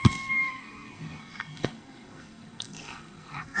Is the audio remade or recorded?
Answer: remade